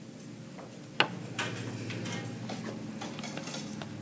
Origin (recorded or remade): recorded